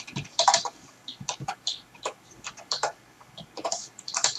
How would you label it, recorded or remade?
remade